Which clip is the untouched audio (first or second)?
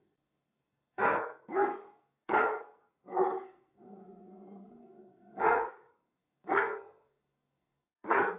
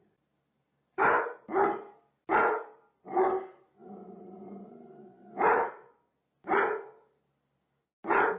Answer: second